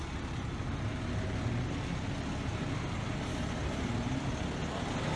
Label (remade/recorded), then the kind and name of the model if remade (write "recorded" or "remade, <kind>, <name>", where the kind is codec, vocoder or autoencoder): recorded